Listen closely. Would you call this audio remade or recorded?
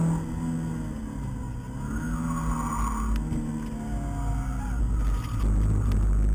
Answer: recorded